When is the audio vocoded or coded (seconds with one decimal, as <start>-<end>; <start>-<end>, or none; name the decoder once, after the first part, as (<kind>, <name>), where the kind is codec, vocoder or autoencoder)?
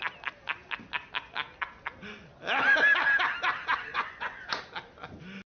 3.9-4.6 (vocoder, Vocos)